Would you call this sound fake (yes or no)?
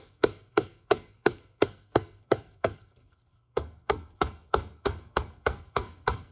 yes